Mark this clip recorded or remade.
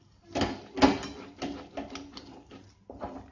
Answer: recorded